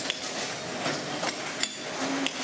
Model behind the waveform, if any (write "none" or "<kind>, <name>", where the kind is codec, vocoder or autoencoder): none